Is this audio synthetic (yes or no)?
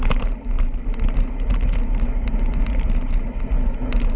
no